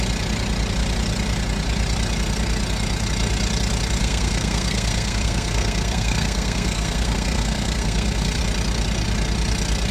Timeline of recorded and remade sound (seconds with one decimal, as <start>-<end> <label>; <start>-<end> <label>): 0.0-4.0 recorded; 4.0-8.4 remade; 8.4-9.9 recorded